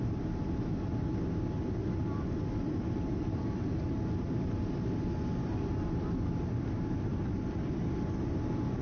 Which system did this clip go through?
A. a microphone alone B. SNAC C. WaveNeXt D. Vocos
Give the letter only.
A